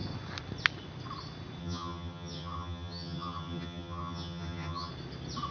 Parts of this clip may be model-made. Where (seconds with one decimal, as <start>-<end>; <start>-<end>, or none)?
1.6-4.9